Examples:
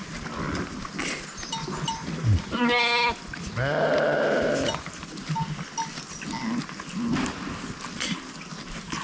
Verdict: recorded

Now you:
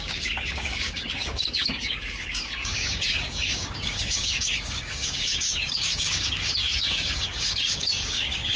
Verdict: remade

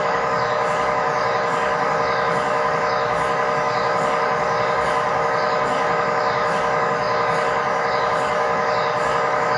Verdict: remade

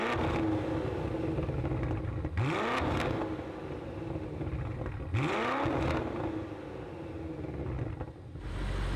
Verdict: recorded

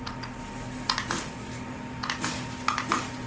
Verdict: recorded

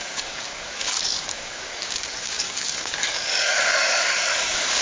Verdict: remade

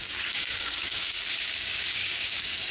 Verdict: remade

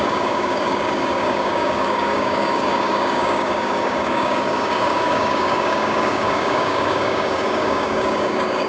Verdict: remade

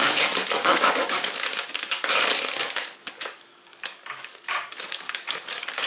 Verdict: remade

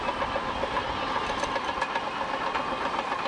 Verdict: recorded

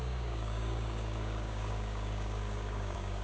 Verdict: remade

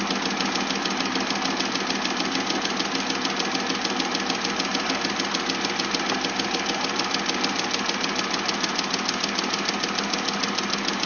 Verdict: recorded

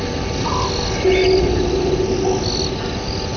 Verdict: recorded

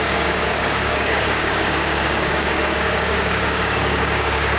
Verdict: remade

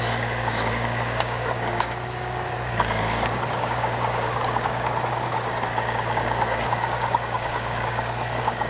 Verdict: remade